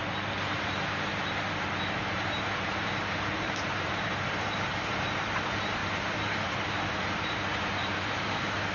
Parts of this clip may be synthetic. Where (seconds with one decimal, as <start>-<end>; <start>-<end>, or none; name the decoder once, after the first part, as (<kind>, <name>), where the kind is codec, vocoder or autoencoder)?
0.0-1.1 (vocoder, BigVGAN v2); 1.8-8.7